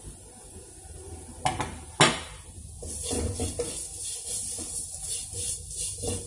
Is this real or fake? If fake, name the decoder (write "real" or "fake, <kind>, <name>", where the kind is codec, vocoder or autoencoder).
real